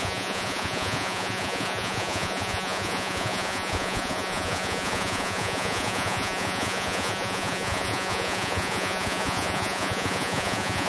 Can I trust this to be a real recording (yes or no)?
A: no